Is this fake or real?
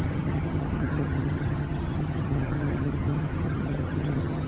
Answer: fake